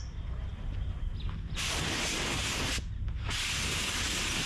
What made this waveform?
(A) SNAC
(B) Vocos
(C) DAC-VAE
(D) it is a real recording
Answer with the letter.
D